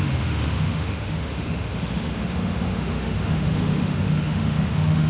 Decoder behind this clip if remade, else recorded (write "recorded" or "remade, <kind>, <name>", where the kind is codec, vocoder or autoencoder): remade, autoencoder, DAC-VAE